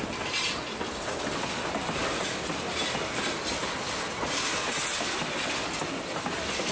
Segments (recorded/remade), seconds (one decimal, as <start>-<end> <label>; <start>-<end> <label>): 0.0-6.7 recorded